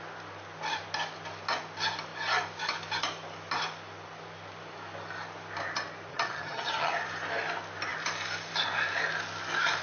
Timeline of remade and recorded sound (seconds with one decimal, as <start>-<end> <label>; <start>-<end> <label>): 0.0-6.1 recorded; 6.1-6.9 remade; 6.9-9.8 recorded